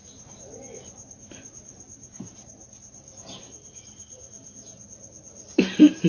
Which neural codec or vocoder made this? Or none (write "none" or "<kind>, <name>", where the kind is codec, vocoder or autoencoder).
vocoder, BigVGAN v2